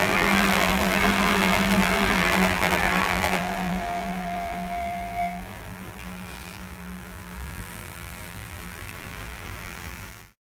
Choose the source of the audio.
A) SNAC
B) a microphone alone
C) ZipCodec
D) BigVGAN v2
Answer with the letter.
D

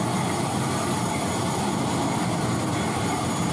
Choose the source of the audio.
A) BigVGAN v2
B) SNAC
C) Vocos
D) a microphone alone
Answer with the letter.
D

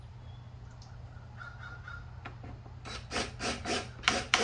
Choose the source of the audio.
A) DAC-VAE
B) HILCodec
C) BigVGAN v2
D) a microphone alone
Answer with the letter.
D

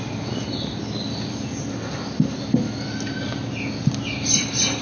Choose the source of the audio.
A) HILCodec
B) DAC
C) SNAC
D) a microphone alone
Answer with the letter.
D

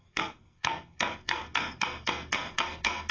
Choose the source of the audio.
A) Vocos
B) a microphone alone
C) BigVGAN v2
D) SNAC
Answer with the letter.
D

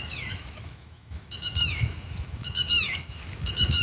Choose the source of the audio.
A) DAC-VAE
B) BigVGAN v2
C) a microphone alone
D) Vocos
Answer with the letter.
A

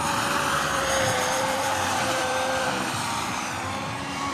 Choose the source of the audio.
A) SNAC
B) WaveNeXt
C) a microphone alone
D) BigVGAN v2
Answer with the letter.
D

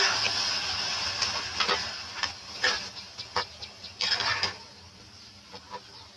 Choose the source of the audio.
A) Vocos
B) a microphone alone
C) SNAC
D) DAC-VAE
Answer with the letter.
B